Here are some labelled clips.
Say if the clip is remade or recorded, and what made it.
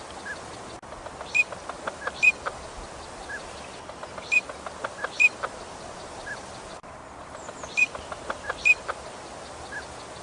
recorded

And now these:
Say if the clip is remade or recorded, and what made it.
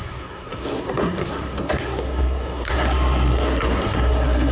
remade, codec, SNAC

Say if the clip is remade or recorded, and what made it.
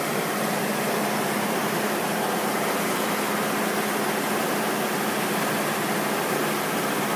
recorded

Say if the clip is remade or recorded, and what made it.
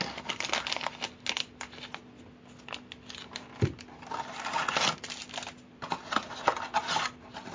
recorded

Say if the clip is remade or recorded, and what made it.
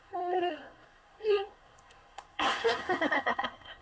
remade, codec, SNAC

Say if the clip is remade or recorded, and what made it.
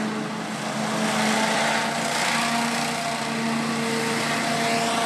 recorded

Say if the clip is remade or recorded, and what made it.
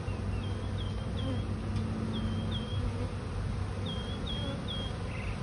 recorded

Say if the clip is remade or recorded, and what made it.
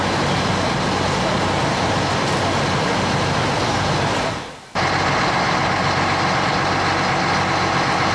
recorded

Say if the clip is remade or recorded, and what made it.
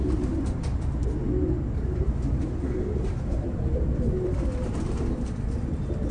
recorded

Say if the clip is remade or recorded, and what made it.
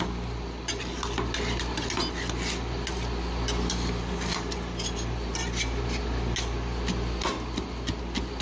recorded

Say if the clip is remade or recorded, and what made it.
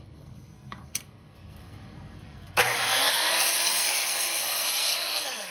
remade, codec, SNAC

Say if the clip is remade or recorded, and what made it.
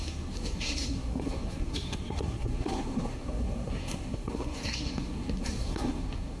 remade, codec, SNAC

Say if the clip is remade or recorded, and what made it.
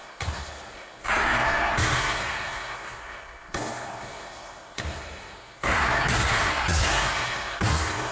remade, codec, SNAC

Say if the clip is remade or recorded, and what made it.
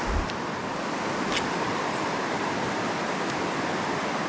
recorded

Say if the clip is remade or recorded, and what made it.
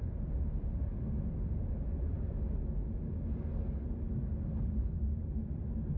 recorded